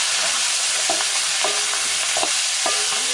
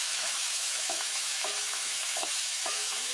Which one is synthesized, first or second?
second